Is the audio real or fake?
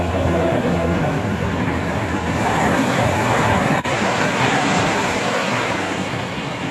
fake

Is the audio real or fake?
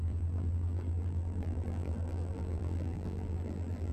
fake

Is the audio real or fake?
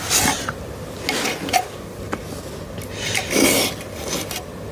real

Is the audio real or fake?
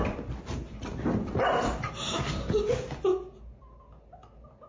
real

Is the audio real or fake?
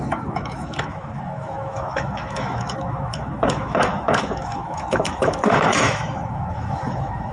fake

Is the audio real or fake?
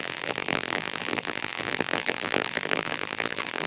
fake